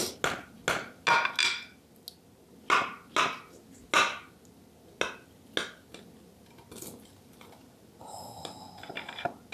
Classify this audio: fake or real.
real